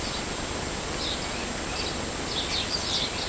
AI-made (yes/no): no